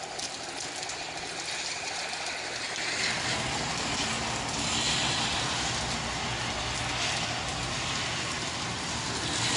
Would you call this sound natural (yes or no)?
yes